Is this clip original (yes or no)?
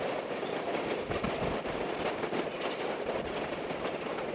yes